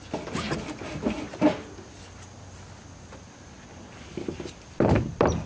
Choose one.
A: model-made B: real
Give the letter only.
B